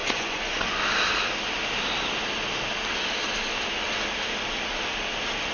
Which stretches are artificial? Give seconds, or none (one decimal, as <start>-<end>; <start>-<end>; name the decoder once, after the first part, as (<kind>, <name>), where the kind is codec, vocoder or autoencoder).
0.0-0.8 (vocoder, Vocos)

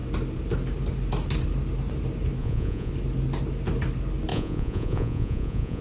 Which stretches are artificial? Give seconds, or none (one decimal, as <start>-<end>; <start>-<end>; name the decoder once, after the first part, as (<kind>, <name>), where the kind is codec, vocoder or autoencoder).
2.4-2.9 (vocoder, Vocos); 4.3-5.8